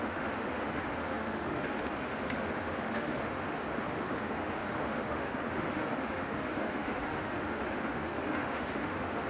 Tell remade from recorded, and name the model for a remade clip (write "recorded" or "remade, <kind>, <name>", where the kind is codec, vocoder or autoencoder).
remade, autoencoder, DAC-VAE